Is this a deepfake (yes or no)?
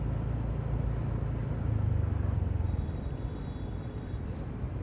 no